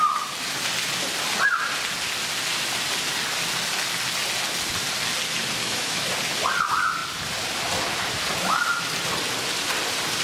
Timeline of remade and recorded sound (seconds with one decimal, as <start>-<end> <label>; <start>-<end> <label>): 0.0-5.6 recorded; 5.6-6.1 remade; 6.1-10.2 recorded